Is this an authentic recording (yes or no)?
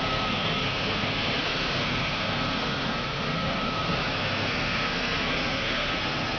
no